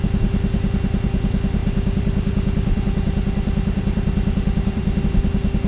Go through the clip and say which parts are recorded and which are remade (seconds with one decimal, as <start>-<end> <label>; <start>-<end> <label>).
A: 0.0-1.6 recorded; 1.6-5.0 remade; 5.0-5.7 recorded